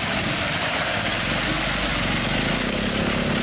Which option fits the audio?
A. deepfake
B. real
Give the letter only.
B